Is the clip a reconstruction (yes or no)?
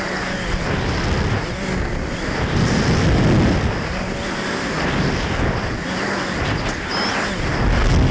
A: no